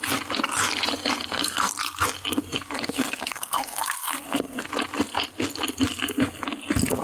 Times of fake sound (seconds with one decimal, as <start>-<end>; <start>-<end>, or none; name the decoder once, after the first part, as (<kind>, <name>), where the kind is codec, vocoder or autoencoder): 1.2-1.7 (codec, SNAC); 2.4-4.7

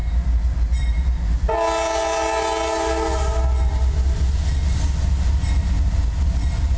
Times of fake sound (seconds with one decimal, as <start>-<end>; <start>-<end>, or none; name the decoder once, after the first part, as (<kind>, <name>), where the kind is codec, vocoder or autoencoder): none

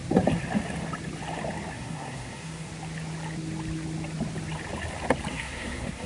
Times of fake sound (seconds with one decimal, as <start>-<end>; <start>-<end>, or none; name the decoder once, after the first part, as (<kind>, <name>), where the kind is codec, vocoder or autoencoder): 1.7-2.7 (codec, SNAC); 5.3-6.1

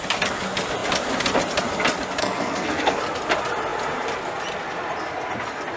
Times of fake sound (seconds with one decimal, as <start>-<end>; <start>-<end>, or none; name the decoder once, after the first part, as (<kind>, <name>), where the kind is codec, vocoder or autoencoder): 2.2-3.0 (codec, SNAC)

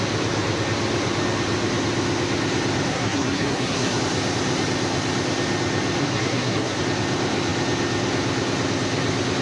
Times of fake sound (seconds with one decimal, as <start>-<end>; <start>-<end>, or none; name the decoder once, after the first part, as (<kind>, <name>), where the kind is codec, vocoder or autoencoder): 2.9-4.0 (codec, SNAC); 6.0-6.8

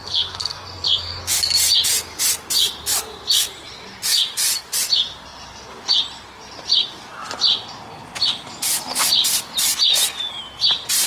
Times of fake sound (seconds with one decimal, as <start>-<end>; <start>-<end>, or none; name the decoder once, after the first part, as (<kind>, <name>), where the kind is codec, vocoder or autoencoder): 0.0-1.3 (codec, SNAC)

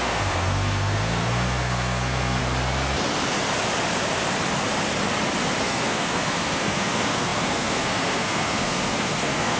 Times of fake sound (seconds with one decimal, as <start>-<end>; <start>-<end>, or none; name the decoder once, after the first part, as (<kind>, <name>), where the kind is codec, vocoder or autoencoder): 0.0-2.4 (codec, SNAC); 5.6-9.6

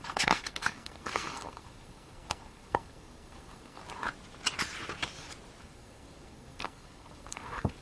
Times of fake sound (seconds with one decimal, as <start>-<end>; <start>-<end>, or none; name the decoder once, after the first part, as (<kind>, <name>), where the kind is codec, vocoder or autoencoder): 0.0-3.8 (codec, SNAC); 5.6-7.8